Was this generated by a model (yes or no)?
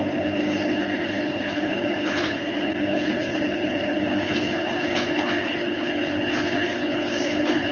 yes